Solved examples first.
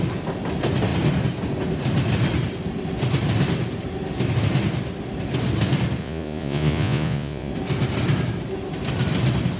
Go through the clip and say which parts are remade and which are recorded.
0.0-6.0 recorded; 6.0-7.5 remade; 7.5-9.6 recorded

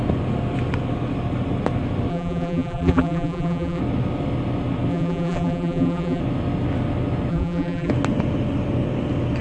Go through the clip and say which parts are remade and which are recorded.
0.0-2.1 recorded; 2.1-3.8 remade; 3.8-4.9 recorded; 4.9-6.2 remade; 6.2-7.3 recorded; 7.3-7.9 remade; 7.9-9.4 recorded

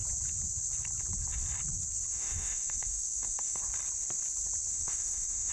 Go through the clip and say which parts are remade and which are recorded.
0.0-2.1 recorded; 2.1-3.6 remade; 3.6-4.7 recorded; 4.7-5.5 remade